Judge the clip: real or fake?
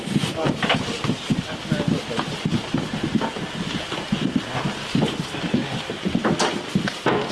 real